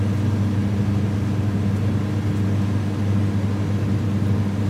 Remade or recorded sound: recorded